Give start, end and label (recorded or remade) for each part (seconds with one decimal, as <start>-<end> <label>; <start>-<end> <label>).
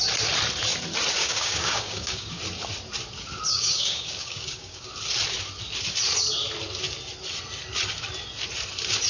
0.0-1.2 recorded; 1.2-2.4 remade; 2.4-3.5 recorded; 3.5-4.9 remade; 4.9-9.1 recorded